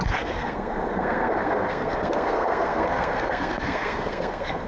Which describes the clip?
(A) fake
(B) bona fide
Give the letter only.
A